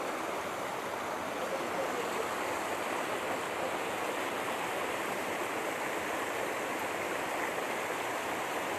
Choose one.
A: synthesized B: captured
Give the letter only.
B